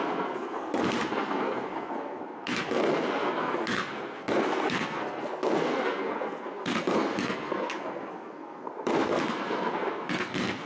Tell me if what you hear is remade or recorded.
remade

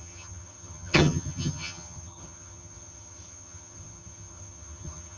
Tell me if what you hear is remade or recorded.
remade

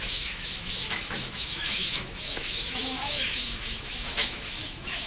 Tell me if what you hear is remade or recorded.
remade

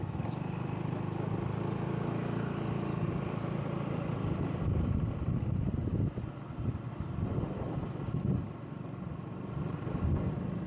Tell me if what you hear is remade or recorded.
recorded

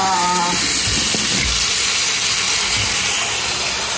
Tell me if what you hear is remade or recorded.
recorded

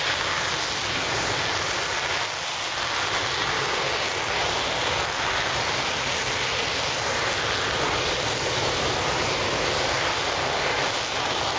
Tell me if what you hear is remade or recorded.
recorded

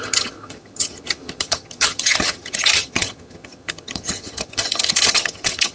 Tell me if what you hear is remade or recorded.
remade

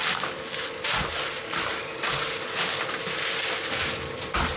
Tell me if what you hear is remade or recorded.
recorded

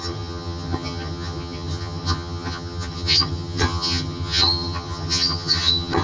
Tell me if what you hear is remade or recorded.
remade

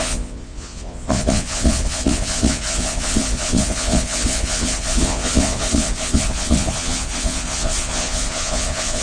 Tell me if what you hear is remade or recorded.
remade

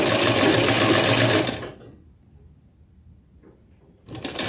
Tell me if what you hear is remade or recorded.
recorded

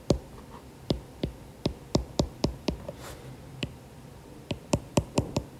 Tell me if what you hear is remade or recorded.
remade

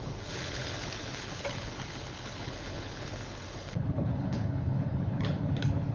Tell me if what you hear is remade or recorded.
remade